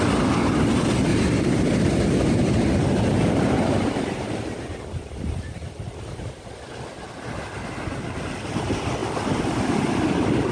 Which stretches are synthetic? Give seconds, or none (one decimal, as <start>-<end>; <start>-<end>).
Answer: 1.1-6.3